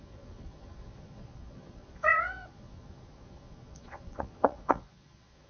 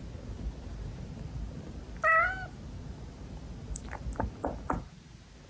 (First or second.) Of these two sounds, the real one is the second